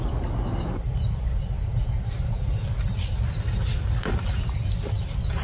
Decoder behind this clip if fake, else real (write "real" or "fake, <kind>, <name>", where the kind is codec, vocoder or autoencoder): real